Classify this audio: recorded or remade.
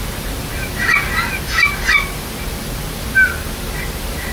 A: recorded